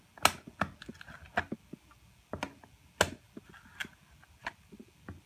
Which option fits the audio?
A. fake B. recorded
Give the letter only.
B